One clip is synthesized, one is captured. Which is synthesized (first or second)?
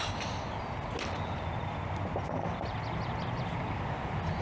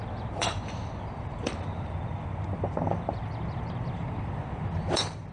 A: second